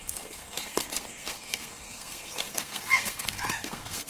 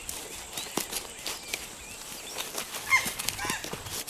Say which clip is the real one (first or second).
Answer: second